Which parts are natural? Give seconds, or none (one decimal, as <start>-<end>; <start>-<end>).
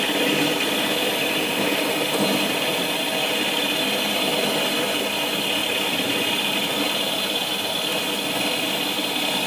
0.0-5.6; 7.8-9.5